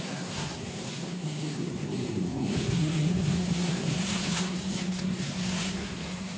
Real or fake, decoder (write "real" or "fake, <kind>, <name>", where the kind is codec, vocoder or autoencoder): fake, codec, SNAC